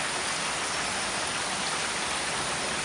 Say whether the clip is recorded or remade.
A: recorded